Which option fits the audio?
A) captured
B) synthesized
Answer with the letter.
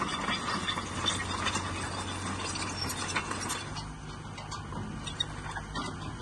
A